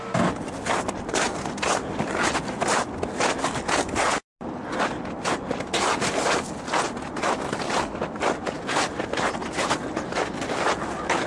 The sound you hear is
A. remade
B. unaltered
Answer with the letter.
B